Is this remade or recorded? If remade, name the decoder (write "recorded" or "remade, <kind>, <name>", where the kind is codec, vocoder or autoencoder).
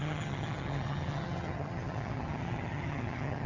remade, vocoder, HiFi-GAN